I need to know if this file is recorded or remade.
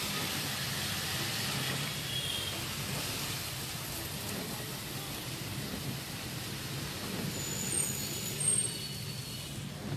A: recorded